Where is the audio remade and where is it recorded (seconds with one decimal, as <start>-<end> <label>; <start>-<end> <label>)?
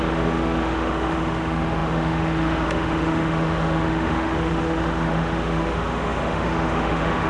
0.0-7.3 remade